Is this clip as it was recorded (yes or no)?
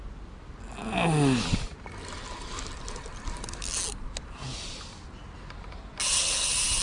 yes